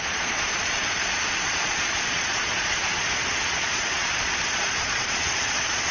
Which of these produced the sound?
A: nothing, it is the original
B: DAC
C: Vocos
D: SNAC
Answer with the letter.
C